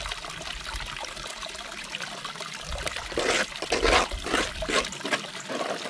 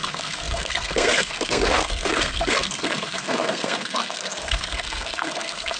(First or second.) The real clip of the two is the first